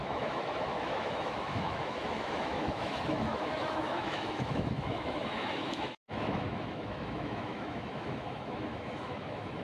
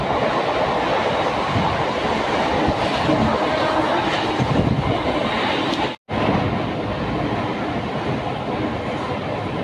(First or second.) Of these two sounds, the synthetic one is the first